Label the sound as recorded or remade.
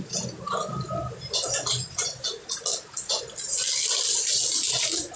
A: recorded